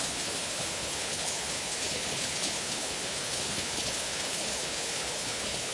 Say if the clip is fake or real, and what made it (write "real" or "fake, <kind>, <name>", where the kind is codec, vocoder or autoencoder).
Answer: fake, codec, HILCodec